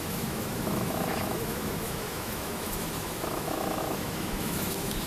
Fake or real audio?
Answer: fake